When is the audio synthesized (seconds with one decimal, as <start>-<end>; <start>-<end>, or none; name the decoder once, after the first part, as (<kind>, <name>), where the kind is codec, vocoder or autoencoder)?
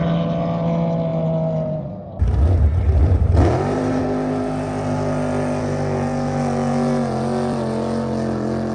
3.0-4.0 (vocoder, BigVGAN v2)